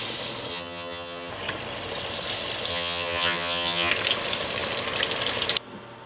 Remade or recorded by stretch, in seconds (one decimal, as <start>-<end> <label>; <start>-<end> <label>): 0.0-0.5 recorded; 0.5-1.3 remade; 1.3-2.7 recorded; 2.7-3.9 remade; 3.9-6.1 recorded